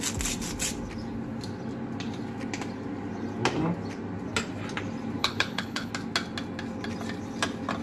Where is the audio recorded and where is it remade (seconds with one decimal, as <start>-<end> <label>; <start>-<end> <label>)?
0.0-5.2 recorded; 5.2-5.9 remade; 5.9-7.8 recorded